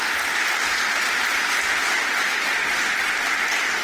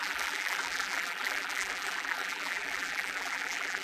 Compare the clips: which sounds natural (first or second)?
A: first